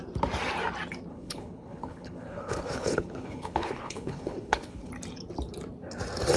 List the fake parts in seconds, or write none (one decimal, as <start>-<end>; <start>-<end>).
1.1-4.9